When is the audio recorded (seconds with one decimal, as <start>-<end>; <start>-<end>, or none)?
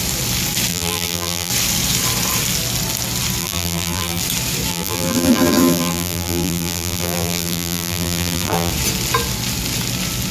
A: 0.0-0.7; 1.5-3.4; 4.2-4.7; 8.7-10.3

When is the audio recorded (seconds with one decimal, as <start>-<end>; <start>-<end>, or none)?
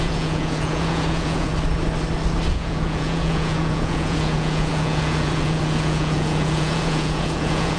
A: 1.5-2.5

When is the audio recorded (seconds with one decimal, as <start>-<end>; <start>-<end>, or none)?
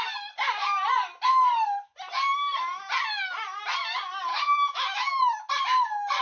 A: 0.0-4.3; 5.5-6.2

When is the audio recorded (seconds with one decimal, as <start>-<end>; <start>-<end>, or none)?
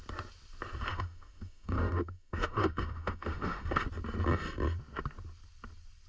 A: 0.0-0.9; 3.8-6.1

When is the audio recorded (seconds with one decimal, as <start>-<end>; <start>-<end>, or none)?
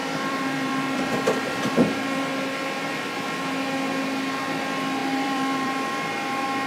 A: 2.2-5.0; 5.7-6.7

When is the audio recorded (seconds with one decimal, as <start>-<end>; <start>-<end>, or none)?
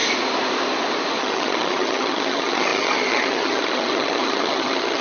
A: 0.0-1.2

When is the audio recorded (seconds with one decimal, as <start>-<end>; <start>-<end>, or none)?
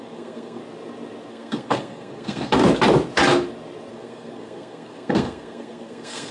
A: 0.6-1.3; 2.6-3.9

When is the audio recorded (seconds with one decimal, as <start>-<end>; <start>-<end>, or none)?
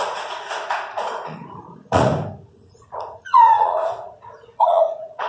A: 2.1-2.7